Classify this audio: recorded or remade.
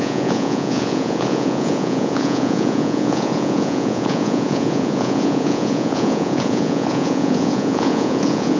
remade